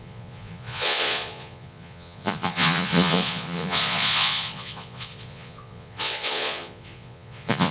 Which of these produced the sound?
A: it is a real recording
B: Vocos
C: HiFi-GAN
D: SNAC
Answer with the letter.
B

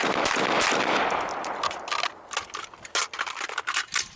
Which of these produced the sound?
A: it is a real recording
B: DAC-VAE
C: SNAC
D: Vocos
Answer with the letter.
A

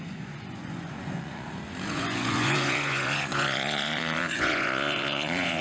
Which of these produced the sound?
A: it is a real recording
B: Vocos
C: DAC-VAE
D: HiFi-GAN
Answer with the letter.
B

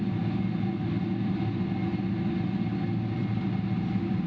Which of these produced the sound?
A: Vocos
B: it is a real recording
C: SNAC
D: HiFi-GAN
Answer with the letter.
B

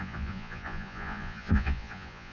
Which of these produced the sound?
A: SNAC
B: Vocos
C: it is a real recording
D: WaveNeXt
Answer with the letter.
B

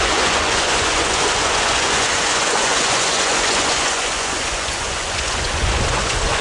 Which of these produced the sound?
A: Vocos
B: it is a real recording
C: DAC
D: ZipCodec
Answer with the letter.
A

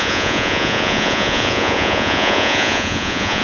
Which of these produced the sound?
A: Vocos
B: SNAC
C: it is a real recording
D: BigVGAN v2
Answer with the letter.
A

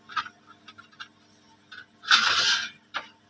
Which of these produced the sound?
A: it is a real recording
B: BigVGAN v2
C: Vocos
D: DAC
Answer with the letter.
A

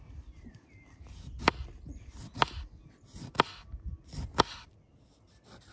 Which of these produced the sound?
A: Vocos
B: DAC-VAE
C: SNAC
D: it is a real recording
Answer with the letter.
D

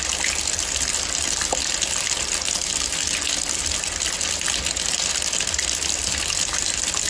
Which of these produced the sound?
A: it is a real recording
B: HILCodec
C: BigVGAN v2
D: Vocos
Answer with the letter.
A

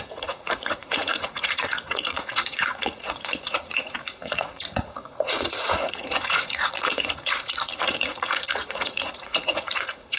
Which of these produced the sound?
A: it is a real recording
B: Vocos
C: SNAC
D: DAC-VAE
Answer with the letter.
B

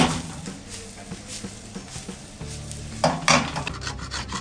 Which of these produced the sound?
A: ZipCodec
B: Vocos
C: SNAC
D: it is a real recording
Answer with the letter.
D